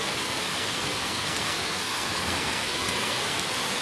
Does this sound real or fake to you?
fake